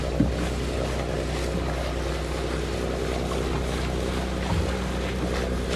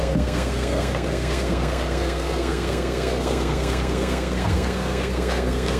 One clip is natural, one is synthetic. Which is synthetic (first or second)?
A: second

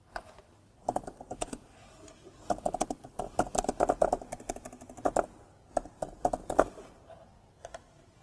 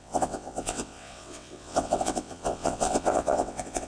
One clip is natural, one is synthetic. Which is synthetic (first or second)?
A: second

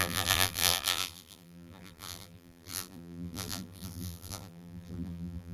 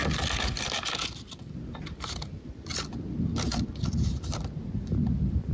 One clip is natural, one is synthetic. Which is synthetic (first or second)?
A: first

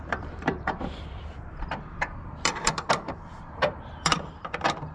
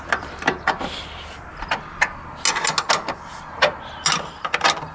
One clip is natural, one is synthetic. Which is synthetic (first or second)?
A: first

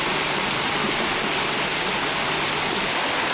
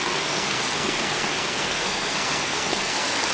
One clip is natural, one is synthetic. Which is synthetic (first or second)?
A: second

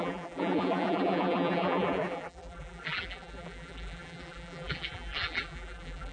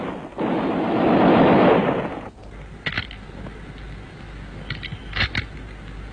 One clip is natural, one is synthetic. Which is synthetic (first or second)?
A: first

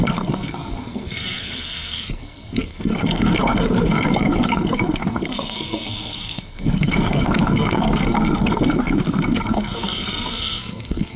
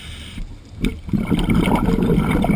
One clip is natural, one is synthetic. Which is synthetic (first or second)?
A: first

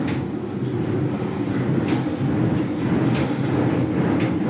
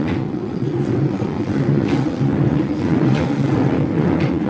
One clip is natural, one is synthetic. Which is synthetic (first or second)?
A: second